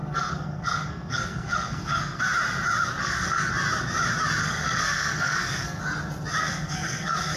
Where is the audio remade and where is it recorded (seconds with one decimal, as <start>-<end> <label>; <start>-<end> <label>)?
0.0-2.2 remade; 2.2-3.0 recorded; 3.0-3.5 remade; 3.5-4.4 recorded; 4.4-5.8 remade; 5.8-6.4 recorded; 6.4-7.4 remade